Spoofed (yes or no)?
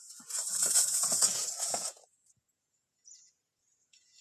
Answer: yes